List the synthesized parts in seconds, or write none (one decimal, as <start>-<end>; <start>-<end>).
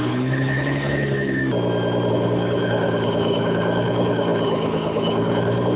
0.0-1.4; 2.1-5.8